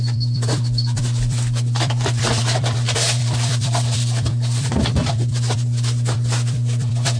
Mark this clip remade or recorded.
remade